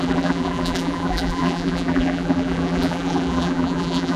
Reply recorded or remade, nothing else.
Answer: remade